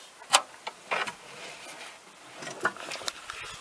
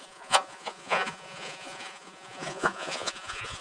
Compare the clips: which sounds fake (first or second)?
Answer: second